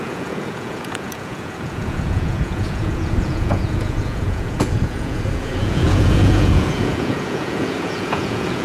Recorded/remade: remade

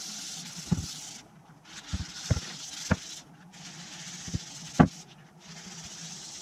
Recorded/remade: recorded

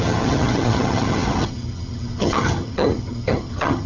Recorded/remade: remade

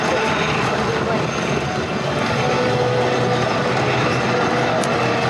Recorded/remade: recorded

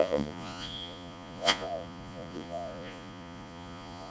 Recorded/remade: remade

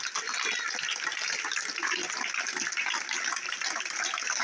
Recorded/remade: recorded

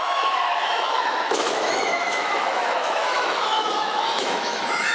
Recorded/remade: remade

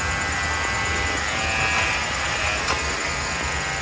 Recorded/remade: recorded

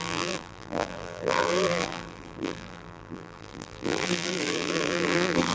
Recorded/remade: remade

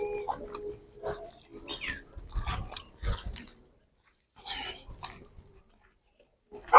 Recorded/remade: recorded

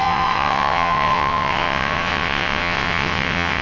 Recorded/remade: remade